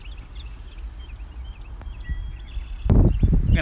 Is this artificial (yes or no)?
no